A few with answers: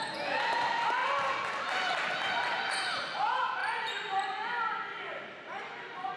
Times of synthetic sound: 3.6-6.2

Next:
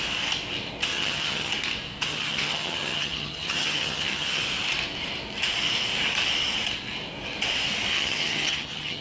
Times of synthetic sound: 0.9-1.5; 2.1-4.4; 7.9-9.0

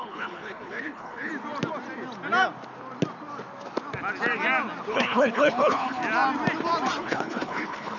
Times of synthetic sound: 0.0-1.3; 4.9-6.0; 7.0-8.0

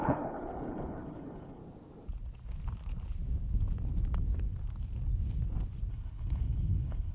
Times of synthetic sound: 0.0-1.6; 5.9-7.1

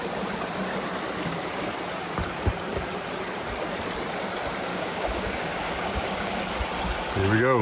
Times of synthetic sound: 4.7-6.4

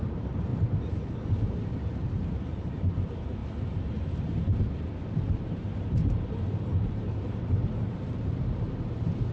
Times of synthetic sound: 0.0-0.5; 1.0-3.4; 4.2-9.3

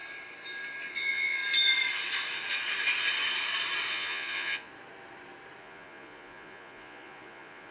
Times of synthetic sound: 0.9-1.4; 3.9-4.7; 5.6-7.7

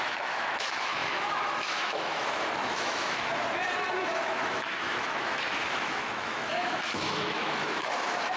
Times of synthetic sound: 0.0-3.3; 4.1-8.4